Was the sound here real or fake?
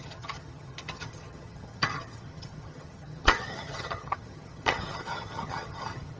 fake